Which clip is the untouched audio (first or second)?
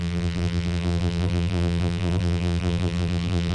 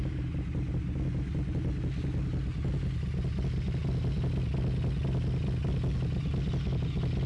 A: second